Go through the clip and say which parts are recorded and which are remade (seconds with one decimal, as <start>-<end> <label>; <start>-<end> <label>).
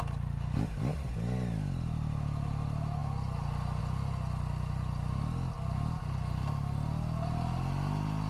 0.0-8.3 recorded